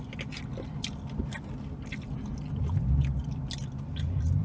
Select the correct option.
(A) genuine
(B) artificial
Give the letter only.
A